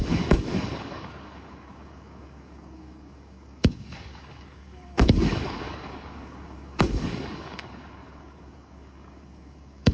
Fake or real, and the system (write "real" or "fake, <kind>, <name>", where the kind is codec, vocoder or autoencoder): fake, codec, DAC